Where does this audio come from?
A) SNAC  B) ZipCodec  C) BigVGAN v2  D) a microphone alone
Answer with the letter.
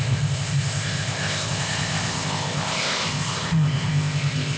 B